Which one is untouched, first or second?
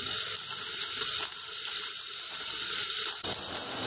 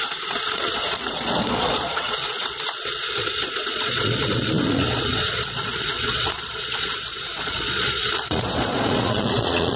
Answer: first